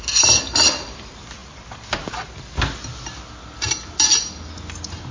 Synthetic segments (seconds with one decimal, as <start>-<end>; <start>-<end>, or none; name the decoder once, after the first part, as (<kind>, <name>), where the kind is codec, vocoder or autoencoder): none